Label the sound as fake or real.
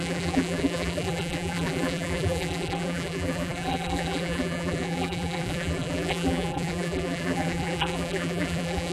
fake